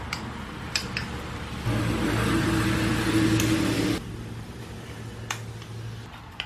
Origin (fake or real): real